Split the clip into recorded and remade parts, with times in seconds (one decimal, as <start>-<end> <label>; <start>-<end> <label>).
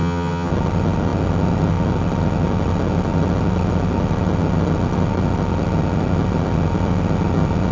0.0-0.5 remade; 0.5-7.7 recorded